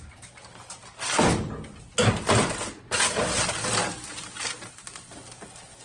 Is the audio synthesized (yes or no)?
no